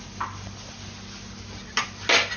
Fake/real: real